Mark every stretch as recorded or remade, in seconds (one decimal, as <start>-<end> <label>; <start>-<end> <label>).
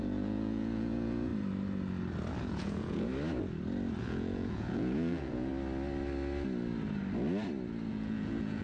0.0-1.3 remade; 1.3-2.4 recorded; 2.4-3.1 remade; 3.1-4.0 recorded; 4.0-5.5 remade; 5.5-7.9 recorded; 7.9-8.6 remade